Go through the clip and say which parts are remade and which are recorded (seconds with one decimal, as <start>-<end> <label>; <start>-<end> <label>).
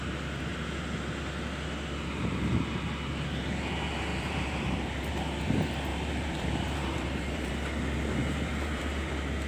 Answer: 0.0-4.1 recorded; 4.1-5.1 remade; 5.1-5.9 recorded; 5.9-7.5 remade; 7.5-8.2 recorded; 8.2-9.1 remade; 9.1-9.5 recorded